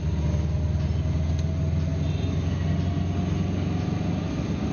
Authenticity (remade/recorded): recorded